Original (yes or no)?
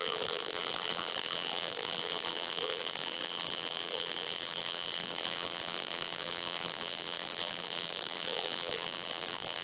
no